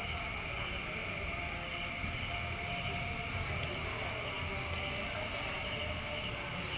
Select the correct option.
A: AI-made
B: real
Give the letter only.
B